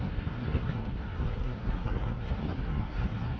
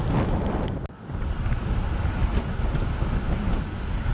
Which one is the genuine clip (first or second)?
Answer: second